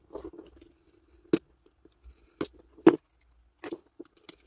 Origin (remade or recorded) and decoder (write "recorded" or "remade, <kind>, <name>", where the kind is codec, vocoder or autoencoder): recorded